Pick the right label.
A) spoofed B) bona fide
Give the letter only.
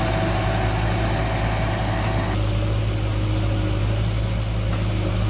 B